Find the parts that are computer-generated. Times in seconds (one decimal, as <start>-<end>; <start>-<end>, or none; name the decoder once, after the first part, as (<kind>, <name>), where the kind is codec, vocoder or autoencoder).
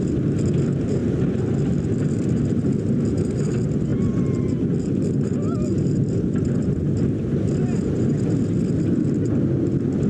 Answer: 1.0-1.8 (vocoder, BigVGAN v2)